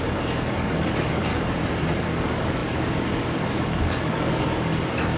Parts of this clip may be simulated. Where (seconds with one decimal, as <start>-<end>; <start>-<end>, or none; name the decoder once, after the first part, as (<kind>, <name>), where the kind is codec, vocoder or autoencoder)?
0.0-1.3 (codec, DAC); 2.0-5.2